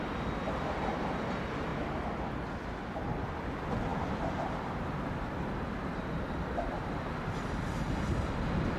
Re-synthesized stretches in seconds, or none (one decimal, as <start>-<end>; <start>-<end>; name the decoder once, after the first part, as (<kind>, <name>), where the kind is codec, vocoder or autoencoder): none